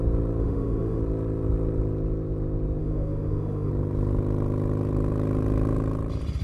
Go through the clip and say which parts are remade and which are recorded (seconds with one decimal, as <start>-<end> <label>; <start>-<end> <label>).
0.0-0.4 recorded; 0.4-1.0 remade; 1.0-2.8 recorded; 2.8-3.7 remade; 3.7-6.4 recorded